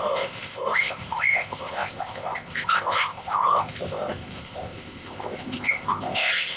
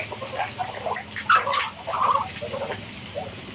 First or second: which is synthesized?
first